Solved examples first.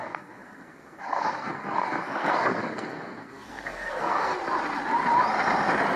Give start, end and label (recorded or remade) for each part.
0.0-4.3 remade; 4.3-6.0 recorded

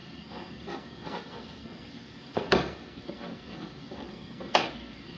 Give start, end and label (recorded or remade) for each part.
0.0-5.2 remade

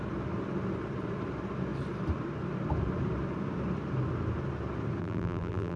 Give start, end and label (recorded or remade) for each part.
0.0-5.0 recorded; 5.0-5.8 remade